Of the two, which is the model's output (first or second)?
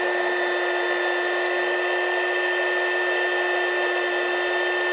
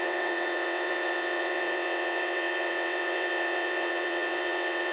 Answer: second